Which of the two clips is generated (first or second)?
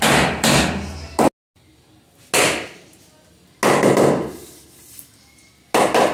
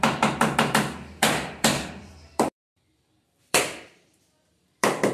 second